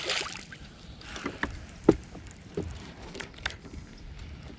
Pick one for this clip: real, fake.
real